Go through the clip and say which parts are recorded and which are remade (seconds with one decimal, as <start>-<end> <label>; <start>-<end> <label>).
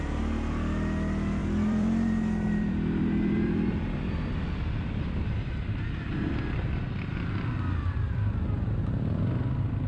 0.0-1.4 recorded; 1.4-5.5 remade; 5.5-7.8 recorded; 7.8-8.7 remade; 8.7-9.9 recorded